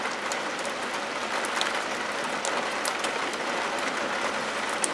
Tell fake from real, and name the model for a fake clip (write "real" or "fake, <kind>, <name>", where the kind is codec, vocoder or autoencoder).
real